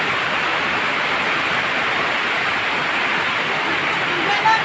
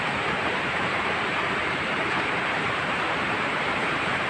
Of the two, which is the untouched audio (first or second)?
first